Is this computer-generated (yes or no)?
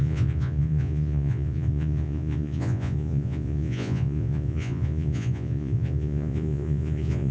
yes